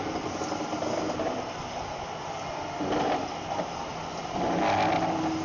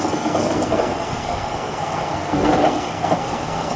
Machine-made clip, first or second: second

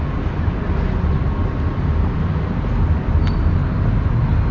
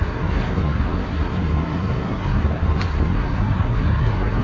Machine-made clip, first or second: second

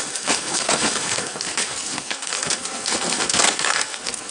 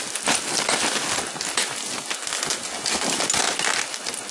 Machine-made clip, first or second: first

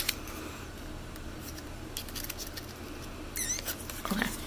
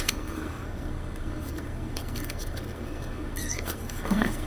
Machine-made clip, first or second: second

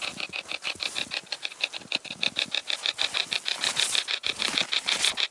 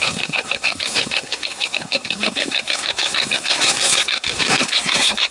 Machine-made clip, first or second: second